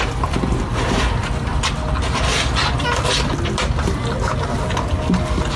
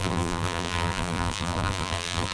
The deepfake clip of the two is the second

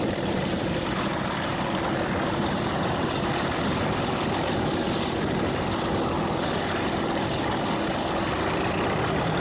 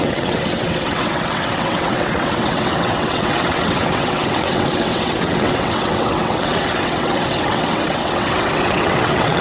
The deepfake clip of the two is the second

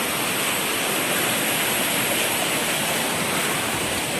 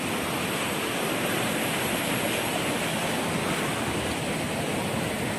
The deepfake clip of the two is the first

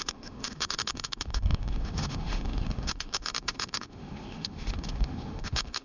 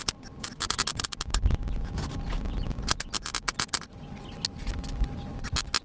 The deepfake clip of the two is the first